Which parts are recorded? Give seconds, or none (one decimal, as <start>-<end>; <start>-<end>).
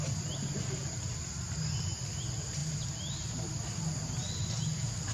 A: 0.0-5.1